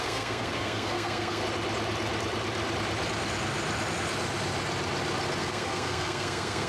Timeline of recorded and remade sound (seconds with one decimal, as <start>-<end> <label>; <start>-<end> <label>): 0.0-1.4 remade; 1.4-5.4 recorded; 5.4-6.7 remade